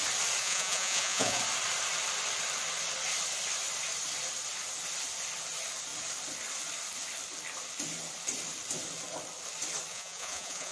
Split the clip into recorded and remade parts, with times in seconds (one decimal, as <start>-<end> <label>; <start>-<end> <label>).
0.0-0.4 recorded; 0.4-1.4 remade; 1.4-9.9 recorded; 9.9-10.7 remade